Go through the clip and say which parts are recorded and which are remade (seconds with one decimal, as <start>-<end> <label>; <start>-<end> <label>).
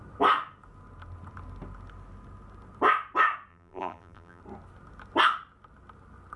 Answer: 0.0-3.5 recorded; 3.5-4.4 remade; 4.4-6.4 recorded